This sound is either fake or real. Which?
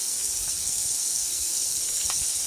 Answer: fake